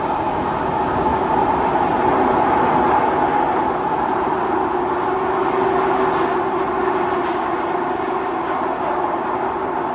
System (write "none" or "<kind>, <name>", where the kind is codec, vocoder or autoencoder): none